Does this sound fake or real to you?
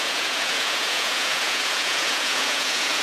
fake